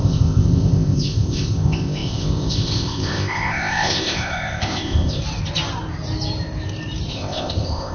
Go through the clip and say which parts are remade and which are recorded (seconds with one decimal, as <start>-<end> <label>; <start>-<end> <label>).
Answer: 0.0-5.2 remade; 5.2-7.1 recorded; 7.1-7.9 remade